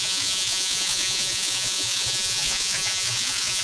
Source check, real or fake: fake